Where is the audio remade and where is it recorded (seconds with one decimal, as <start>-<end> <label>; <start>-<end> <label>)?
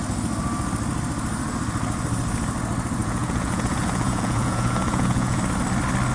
0.0-3.0 recorded; 3.0-5.4 remade; 5.4-6.1 recorded